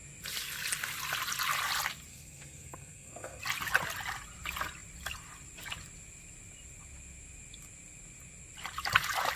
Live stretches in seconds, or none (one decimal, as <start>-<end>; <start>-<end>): 0.0-2.1; 3.4-9.4